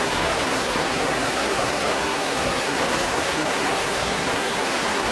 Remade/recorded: remade